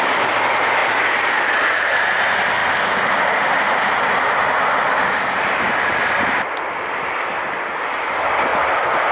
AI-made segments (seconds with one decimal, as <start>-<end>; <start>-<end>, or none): 0.8-2.0